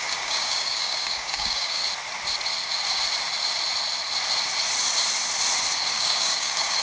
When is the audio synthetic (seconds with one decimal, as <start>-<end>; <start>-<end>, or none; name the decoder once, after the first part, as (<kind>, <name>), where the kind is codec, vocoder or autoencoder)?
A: 0.0-1.8 (codec, DAC); 5.9-6.8